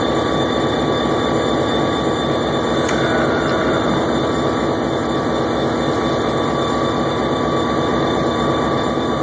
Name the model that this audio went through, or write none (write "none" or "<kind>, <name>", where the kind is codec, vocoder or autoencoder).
none